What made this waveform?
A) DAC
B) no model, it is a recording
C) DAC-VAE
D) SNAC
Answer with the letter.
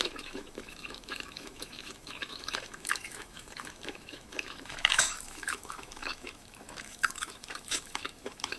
C